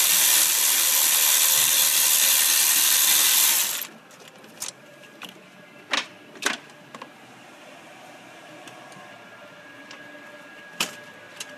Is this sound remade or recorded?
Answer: recorded